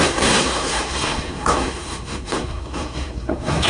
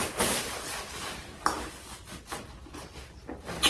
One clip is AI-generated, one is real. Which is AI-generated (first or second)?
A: first